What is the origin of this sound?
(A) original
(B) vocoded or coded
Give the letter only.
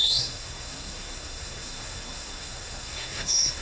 B